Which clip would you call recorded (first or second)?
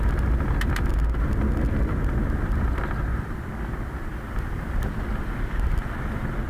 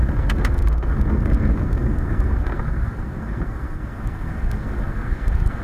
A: first